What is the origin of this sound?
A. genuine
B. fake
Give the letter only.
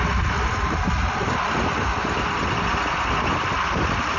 A